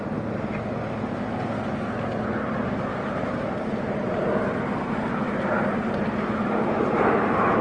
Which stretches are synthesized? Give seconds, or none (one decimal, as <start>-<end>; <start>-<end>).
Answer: 2.9-7.6